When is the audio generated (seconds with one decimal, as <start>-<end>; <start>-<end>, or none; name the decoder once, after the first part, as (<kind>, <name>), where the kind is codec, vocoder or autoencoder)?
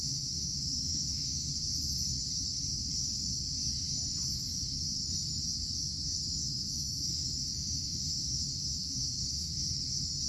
0.0-1.5 (autoencoder, DAC-VAE); 6.4-9.5